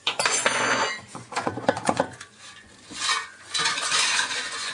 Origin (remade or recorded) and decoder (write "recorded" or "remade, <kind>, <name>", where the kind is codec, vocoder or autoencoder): remade, vocoder, Vocos